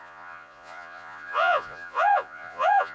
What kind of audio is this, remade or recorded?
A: remade